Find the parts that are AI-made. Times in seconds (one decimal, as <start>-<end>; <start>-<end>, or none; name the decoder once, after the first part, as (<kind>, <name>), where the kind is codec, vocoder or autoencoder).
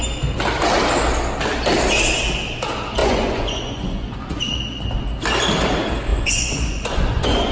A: 3.0-4.4 (vocoder, Vocos); 6.1-7.5